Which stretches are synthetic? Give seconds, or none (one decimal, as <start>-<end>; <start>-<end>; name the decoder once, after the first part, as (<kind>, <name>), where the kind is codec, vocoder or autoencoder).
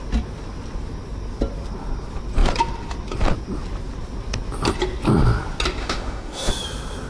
5.8-6.5 (autoencoder, DAC-VAE)